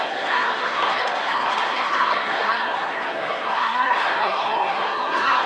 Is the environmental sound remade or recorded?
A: remade